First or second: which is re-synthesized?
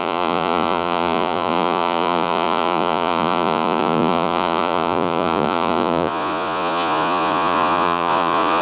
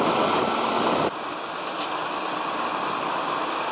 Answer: first